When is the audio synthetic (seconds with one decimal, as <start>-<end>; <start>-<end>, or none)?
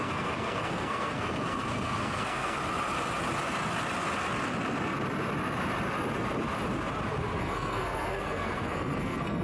0.0-2.6; 7.4-9.4